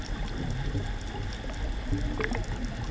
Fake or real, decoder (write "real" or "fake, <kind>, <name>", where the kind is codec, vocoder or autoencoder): real